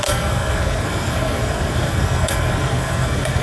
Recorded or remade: remade